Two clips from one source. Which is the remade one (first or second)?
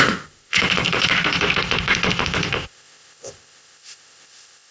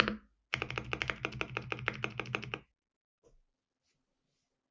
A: first